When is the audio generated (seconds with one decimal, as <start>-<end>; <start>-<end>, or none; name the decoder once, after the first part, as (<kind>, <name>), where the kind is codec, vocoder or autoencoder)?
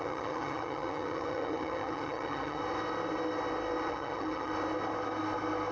0.0-2.6 (vocoder, HiFi-GAN); 3.9-4.5